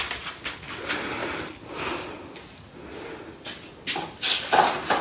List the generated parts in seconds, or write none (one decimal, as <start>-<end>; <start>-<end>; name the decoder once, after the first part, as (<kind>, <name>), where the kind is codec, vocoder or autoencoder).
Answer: none

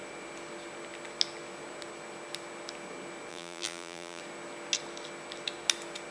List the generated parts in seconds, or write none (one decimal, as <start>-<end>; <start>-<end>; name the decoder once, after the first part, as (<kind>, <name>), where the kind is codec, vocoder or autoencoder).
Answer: 3.3-4.2 (vocoder, BigVGAN v2)

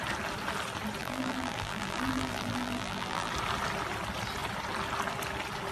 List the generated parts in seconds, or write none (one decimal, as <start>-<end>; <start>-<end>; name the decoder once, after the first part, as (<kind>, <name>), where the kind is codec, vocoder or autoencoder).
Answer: 1.0-3.3 (vocoder, BigVGAN v2)

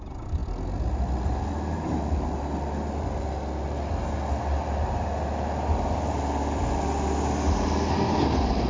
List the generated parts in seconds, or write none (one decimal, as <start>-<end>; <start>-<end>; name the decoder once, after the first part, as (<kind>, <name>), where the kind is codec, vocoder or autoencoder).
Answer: none

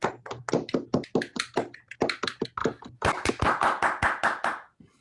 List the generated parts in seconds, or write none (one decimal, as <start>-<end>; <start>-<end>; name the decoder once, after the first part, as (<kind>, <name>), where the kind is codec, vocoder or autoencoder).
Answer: 2.6-3.3 (vocoder, BigVGAN v2)